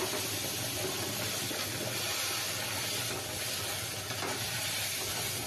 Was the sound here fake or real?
real